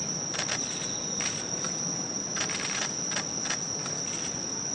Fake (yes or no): no